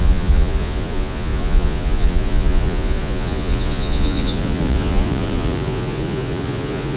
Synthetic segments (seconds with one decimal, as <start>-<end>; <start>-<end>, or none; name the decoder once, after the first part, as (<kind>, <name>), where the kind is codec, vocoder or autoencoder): 0.0-7.0 (vocoder, Vocos)